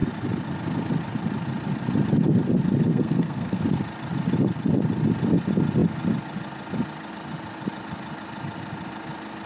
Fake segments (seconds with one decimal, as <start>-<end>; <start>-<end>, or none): 2.9-3.6